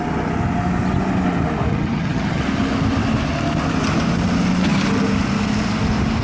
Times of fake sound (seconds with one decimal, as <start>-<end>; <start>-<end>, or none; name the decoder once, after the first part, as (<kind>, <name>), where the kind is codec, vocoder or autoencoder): 1.7-2.4 (vocoder, HiFi-GAN)